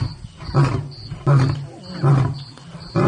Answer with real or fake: real